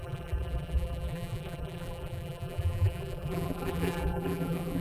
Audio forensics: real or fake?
fake